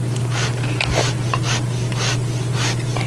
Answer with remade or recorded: recorded